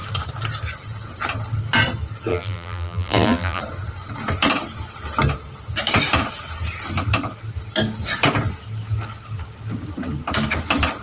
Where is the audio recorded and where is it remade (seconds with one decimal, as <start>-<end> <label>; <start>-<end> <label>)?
0.0-2.3 recorded; 2.3-3.6 remade; 3.6-11.0 recorded